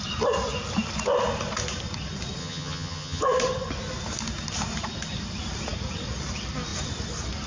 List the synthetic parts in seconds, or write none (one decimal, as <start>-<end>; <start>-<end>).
2.4-3.2